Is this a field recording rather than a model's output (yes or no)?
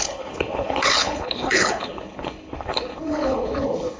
no